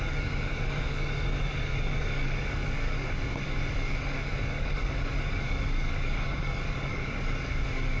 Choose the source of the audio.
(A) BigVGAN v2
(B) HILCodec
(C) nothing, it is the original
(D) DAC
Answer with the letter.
D